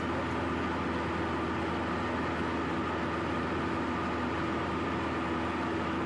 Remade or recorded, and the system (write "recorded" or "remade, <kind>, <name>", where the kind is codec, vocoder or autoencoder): recorded